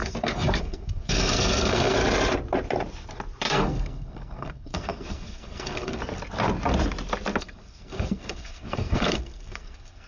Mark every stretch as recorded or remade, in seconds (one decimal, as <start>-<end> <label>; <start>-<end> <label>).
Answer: 0.0-2.0 remade; 2.0-3.5 recorded; 3.5-6.0 remade; 6.0-7.4 recorded; 7.4-10.1 remade